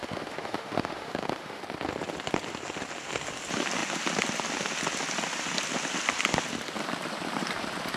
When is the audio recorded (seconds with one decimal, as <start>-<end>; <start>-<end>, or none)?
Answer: 1.6-8.0